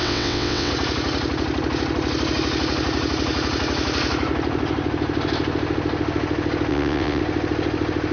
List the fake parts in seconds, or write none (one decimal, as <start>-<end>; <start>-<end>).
0.0-0.7; 6.7-7.2